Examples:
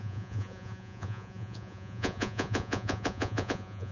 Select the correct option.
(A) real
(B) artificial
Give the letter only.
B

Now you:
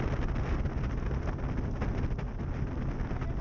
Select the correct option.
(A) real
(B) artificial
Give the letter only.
A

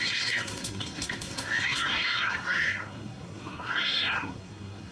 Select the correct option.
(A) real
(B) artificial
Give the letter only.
B